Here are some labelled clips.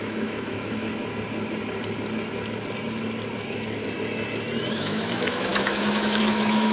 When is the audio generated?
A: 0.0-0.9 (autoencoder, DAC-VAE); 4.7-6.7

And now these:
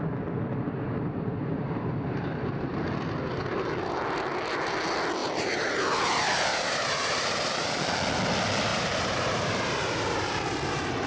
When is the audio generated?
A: 0.5-2.6 (vocoder, BigVGAN v2); 5.2-5.8; 6.5-7.8; 8.7-11.1